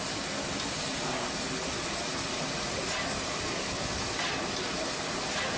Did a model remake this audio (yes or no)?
no